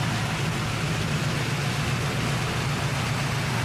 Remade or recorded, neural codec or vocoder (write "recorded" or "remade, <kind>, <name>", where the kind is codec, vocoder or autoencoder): recorded